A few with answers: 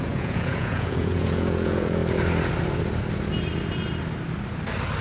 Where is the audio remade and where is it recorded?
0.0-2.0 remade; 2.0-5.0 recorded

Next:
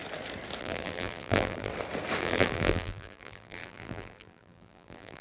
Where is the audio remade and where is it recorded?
0.0-0.6 recorded; 0.6-1.7 remade; 1.7-2.2 recorded; 2.2-5.2 remade

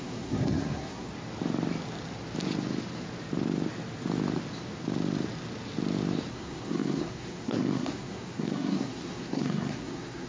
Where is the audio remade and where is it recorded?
0.0-1.1 remade; 1.1-6.3 recorded; 6.3-10.3 remade

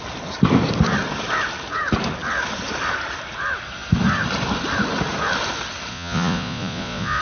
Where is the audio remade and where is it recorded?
0.0-5.9 recorded; 5.9-7.2 remade

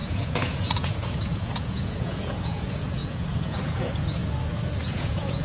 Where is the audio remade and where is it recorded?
0.0-4.2 remade; 4.2-4.8 recorded; 4.8-5.4 remade